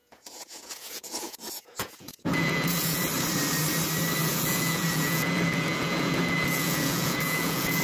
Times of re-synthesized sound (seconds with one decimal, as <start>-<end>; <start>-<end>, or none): 0.0-3.0; 4.2-7.8